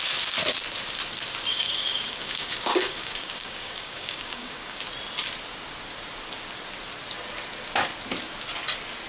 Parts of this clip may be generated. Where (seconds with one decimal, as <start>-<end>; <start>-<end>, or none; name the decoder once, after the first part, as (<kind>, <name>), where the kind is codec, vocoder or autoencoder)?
1.5-4.8 (codec, DAC)